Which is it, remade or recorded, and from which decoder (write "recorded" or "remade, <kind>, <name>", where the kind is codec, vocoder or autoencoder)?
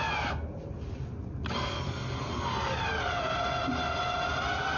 recorded